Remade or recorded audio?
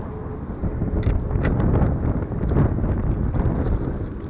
recorded